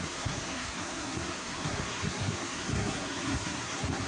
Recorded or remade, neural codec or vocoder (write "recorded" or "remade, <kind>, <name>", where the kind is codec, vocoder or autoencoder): remade, codec, SNAC